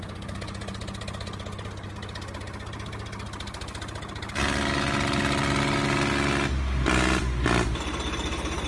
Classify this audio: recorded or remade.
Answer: recorded